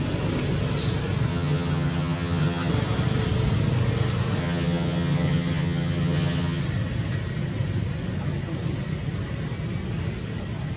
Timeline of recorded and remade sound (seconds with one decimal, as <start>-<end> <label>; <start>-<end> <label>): 0.0-1.3 recorded; 1.3-2.7 remade; 2.7-4.4 recorded; 4.4-6.6 remade; 6.6-10.8 recorded